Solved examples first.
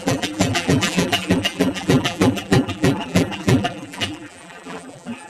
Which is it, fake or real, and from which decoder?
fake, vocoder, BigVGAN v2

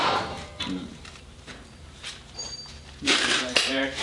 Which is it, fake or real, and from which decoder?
fake, vocoder, BigVGAN v2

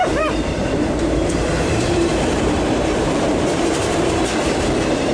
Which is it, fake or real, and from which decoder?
fake, vocoder, BigVGAN v2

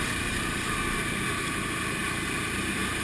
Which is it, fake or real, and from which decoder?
fake, vocoder, BigVGAN v2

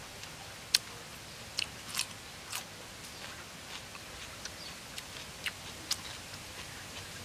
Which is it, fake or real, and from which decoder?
real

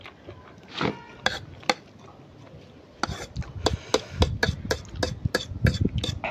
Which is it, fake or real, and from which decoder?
real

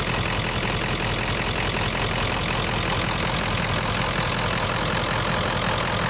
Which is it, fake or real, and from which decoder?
real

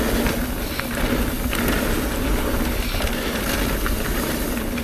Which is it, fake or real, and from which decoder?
real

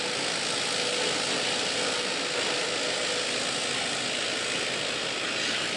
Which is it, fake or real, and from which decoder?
real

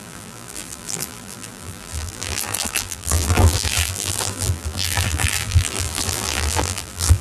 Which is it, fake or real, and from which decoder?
fake, vocoder, BigVGAN v2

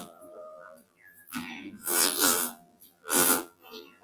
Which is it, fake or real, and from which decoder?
fake, vocoder, BigVGAN v2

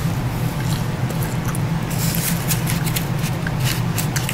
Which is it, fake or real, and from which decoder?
real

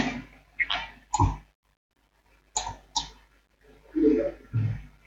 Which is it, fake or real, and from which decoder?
real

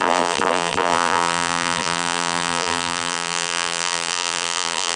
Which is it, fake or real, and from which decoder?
fake, vocoder, BigVGAN v2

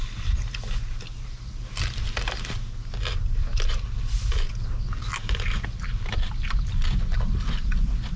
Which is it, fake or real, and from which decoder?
real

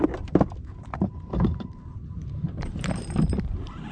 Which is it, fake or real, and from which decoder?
fake, vocoder, BigVGAN v2